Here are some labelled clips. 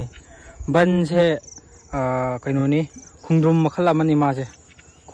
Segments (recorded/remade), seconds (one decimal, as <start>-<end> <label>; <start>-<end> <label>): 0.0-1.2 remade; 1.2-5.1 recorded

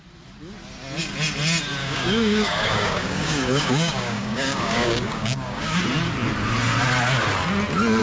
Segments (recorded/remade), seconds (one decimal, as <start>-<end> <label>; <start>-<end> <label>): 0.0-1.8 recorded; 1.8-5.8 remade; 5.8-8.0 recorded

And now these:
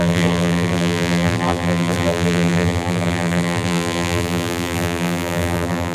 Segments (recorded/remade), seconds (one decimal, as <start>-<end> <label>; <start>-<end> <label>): 0.0-5.9 remade